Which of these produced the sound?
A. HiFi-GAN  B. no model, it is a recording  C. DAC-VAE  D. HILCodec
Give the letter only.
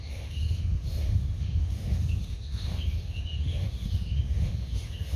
C